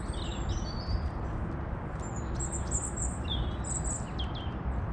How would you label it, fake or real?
real